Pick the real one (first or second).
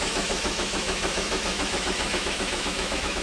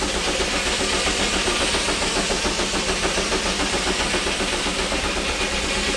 second